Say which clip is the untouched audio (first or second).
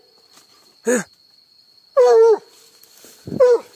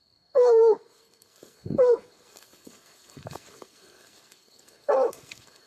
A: first